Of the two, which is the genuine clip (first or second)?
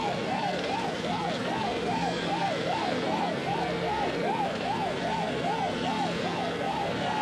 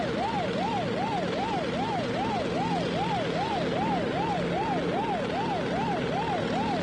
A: second